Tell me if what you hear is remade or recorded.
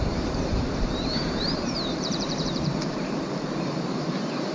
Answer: remade